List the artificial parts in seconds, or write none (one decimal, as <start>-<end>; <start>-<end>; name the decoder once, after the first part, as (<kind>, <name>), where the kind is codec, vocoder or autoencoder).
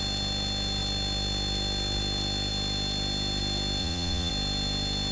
3.8-4.3 (vocoder, Vocos)